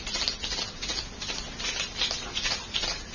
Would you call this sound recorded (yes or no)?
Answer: yes